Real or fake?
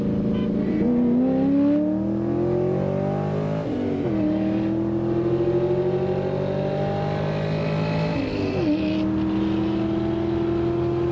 real